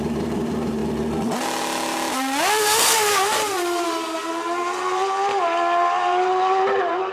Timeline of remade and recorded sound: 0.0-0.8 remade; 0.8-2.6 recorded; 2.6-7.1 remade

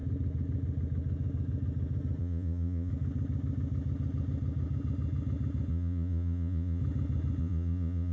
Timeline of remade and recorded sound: 0.0-2.2 recorded; 2.2-2.9 remade; 2.9-5.7 recorded; 5.7-6.8 remade; 6.8-7.4 recorded; 7.4-8.1 remade

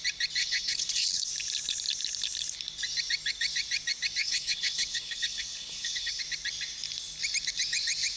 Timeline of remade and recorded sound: 0.0-0.4 recorded; 0.4-1.3 remade; 1.3-4.2 recorded; 4.2-6.2 remade; 6.2-8.2 recorded

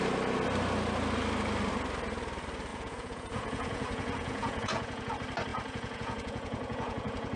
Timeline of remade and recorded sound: 0.0-2.7 recorded; 2.7-5.1 remade; 5.1-5.5 recorded; 5.5-7.4 remade